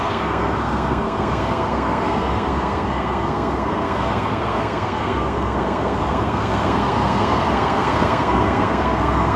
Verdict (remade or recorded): remade